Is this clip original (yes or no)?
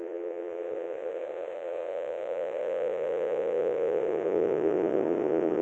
no